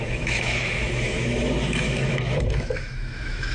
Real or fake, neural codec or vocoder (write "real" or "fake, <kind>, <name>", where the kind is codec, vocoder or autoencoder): fake, autoencoder, DAC-VAE